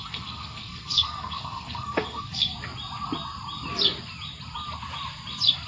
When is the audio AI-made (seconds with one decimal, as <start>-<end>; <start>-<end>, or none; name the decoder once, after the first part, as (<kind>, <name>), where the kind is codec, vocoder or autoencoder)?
0.0-2.5 (codec, SNAC)